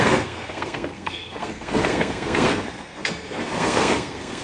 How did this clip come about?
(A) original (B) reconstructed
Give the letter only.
B